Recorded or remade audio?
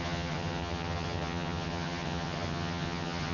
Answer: remade